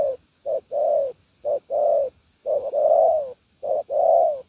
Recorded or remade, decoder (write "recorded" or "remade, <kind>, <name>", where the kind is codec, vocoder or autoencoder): recorded